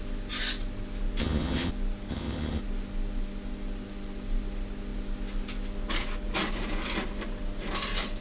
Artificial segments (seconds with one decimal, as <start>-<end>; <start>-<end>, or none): 1.2-1.7; 2.1-2.6